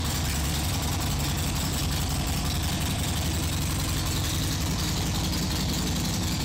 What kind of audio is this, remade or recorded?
recorded